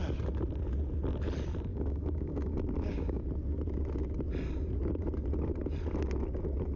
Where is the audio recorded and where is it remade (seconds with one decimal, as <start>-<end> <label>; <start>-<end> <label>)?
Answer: 0.0-1.7 recorded; 1.7-3.2 remade; 3.2-6.8 recorded